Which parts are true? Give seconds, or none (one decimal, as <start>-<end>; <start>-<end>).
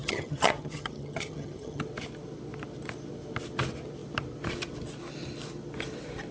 1.8-6.3